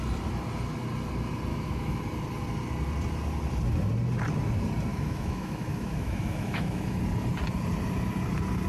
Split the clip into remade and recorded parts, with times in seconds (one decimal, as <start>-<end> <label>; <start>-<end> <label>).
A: 0.0-1.5 recorded; 1.5-2.0 remade; 2.0-4.9 recorded; 4.9-7.0 remade; 7.0-8.7 recorded